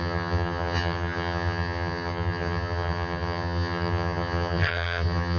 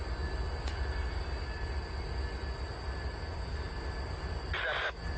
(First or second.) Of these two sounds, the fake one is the first